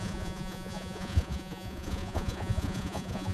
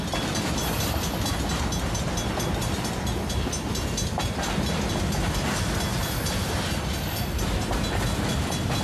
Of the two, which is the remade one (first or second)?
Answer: first